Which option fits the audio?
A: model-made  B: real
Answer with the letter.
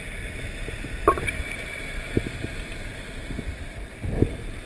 B